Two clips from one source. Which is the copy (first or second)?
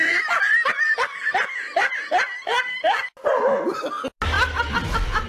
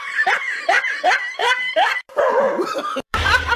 second